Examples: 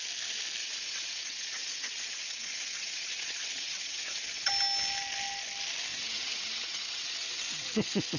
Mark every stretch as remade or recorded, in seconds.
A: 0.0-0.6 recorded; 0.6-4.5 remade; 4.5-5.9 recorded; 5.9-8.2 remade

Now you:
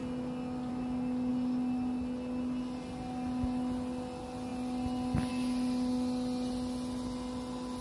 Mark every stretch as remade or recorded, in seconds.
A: 0.0-7.8 recorded

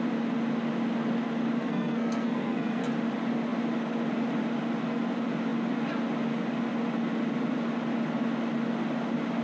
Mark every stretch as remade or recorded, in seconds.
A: 0.0-1.6 recorded; 1.6-2.9 remade; 2.9-9.4 recorded

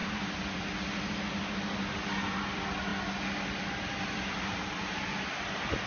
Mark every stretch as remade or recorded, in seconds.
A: 0.0-5.9 recorded

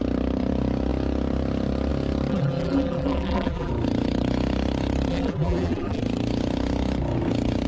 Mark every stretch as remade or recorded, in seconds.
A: 0.0-2.3 recorded; 2.3-3.7 remade; 3.7-5.1 recorded; 5.1-6.0 remade; 6.0-7.7 recorded

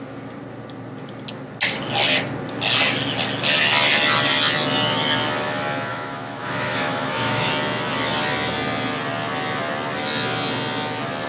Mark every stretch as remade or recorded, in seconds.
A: 0.0-5.9 recorded; 5.9-7.5 remade; 7.5-11.3 recorded

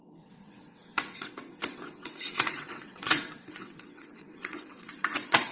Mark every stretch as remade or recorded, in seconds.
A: 0.0-5.5 remade